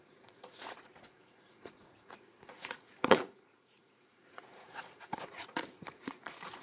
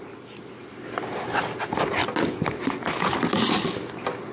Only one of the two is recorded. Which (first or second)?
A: second